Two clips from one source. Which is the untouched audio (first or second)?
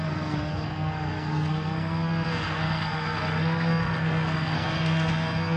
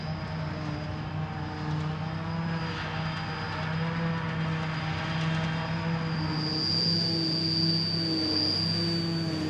second